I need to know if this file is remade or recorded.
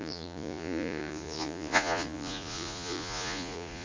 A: remade